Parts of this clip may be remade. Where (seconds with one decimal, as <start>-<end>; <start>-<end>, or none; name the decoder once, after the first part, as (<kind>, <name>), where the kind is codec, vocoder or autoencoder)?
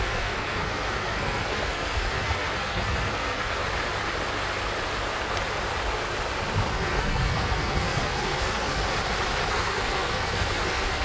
0.0-3.6 (codec, SNAC); 6.7-8.8; 9.5-11.0